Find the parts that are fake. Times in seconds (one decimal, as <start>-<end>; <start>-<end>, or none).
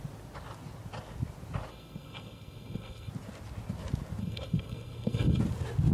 1.7-3.1; 4.2-5.4